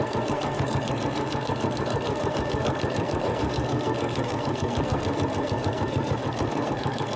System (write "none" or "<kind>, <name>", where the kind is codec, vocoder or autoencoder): codec, SNAC